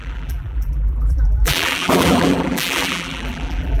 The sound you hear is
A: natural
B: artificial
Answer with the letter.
B